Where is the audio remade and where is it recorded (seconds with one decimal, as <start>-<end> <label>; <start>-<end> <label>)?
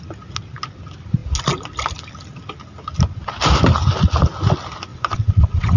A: 0.0-4.9 recorded; 4.9-5.8 remade